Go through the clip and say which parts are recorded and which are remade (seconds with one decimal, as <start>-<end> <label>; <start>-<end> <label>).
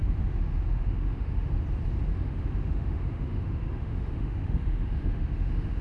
0.0-1.5 remade; 1.5-2.1 recorded; 2.1-5.8 remade